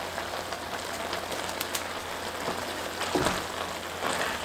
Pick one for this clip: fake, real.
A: real